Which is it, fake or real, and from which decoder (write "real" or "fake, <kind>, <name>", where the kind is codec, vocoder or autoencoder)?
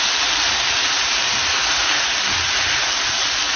real